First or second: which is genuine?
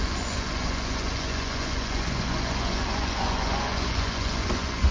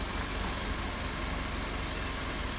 second